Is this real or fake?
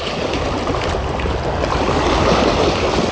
real